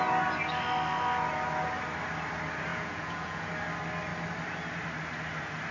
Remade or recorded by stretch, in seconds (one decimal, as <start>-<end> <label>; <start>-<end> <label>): 0.0-2.7 recorded; 2.7-3.5 remade; 3.5-5.7 recorded